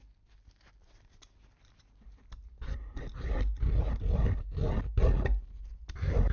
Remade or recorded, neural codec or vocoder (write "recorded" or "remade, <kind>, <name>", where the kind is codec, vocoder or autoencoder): recorded